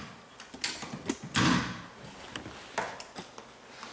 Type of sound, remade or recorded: recorded